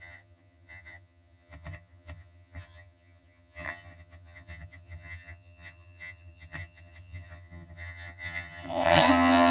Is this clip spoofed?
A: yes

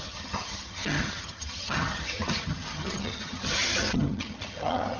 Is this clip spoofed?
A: yes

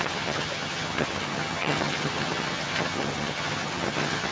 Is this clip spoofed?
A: yes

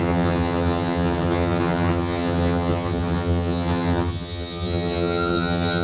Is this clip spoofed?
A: yes